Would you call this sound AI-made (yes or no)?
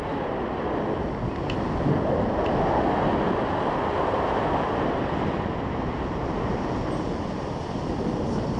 no